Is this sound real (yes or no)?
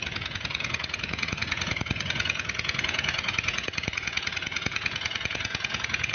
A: no